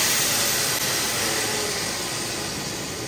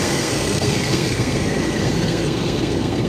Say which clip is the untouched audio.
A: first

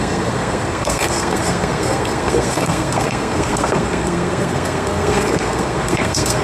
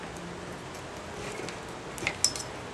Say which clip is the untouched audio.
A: second